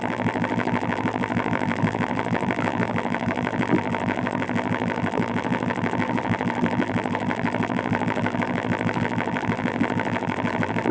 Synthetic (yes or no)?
yes